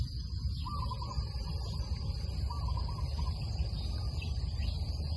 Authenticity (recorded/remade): recorded